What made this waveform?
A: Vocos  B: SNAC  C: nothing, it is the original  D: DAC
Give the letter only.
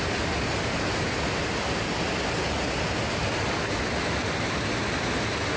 C